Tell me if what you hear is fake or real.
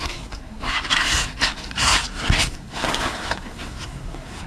fake